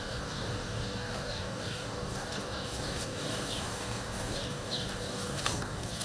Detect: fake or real fake